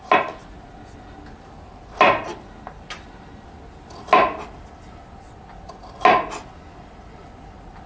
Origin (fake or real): real